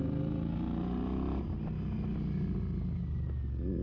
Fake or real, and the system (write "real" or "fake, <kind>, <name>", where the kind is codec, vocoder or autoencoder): real